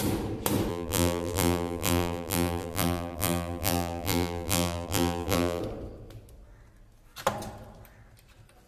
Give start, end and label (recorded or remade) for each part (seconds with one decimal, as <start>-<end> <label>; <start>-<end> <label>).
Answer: 0.0-0.7 recorded; 0.7-5.6 remade; 5.6-8.7 recorded